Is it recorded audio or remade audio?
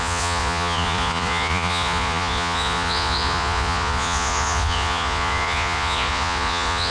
remade